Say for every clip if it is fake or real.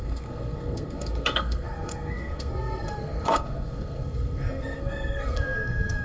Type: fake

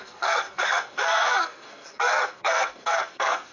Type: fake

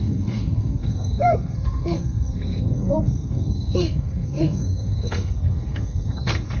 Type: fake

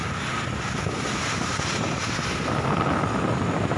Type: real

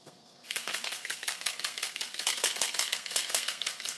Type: fake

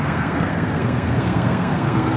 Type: fake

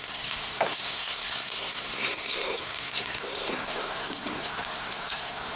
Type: fake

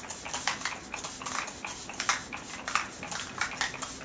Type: real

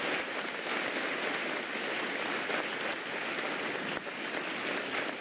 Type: real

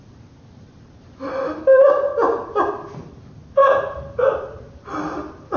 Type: real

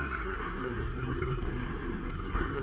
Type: fake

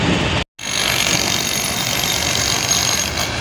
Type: real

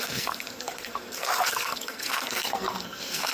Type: fake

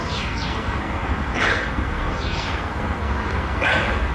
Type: fake